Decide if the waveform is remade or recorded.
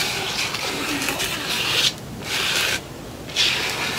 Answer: recorded